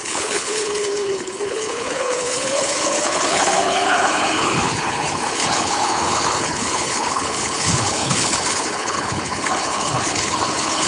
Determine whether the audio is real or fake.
fake